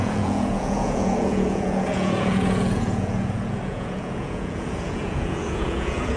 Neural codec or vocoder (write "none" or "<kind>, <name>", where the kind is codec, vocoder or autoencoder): vocoder, Vocos